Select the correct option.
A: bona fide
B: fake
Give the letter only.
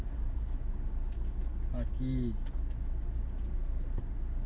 A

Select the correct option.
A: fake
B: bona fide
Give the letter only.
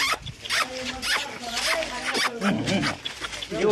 B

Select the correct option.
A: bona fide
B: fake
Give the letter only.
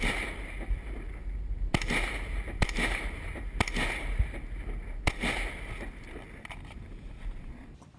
A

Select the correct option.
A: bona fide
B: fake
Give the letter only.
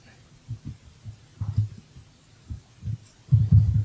A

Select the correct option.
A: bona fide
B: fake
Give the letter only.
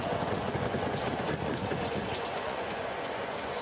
B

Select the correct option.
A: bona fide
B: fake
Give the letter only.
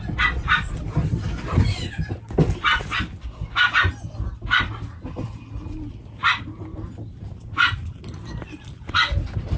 A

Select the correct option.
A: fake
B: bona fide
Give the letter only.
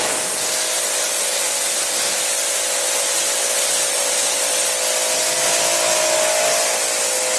B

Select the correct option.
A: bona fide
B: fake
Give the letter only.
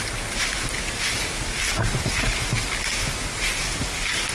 A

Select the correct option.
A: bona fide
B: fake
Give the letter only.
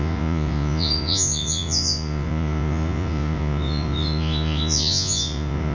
B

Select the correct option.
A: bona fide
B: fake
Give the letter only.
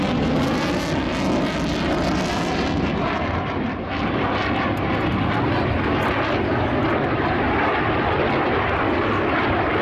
A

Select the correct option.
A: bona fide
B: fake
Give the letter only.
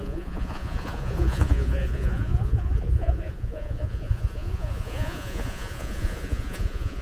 B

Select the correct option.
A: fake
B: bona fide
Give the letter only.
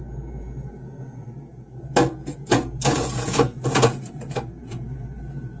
A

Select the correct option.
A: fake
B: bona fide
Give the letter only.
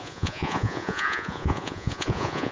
A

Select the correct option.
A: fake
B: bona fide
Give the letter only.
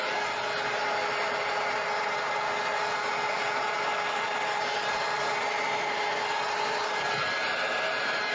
B